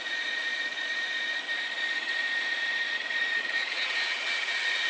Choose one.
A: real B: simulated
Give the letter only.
B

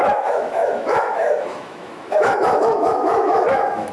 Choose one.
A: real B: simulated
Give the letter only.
B